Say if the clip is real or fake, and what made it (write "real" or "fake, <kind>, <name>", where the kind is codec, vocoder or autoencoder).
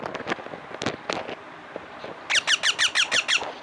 real